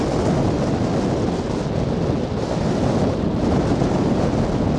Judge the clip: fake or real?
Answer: real